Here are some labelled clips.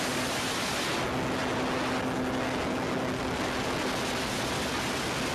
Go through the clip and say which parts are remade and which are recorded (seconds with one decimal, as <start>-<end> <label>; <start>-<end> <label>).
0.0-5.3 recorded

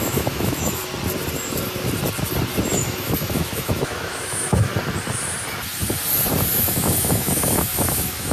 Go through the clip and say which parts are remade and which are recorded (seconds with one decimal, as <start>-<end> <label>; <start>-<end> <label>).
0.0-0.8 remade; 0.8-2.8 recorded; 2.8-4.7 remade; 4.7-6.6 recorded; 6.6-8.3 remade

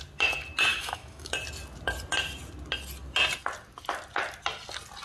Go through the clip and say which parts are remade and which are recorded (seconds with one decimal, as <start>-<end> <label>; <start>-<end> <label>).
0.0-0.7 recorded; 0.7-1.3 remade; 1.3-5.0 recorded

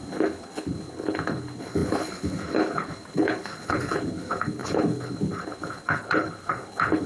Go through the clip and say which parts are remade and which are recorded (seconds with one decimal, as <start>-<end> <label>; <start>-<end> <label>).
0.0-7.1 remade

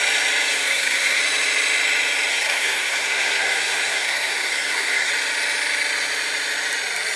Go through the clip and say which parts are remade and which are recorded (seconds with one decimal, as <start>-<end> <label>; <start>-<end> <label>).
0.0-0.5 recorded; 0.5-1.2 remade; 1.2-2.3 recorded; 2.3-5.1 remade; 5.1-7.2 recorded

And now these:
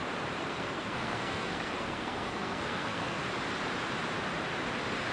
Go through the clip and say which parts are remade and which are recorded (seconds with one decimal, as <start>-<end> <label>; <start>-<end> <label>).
0.0-0.4 recorded; 0.4-3.2 remade; 3.2-5.1 recorded

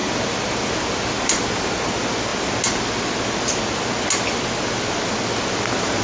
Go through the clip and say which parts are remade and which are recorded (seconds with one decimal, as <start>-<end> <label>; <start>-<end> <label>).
0.0-1.9 remade; 1.9-6.0 recorded

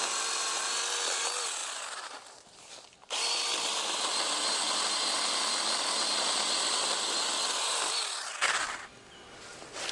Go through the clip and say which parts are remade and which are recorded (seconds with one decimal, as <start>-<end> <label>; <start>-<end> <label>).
0.0-9.9 recorded